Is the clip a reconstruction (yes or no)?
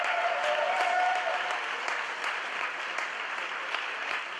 yes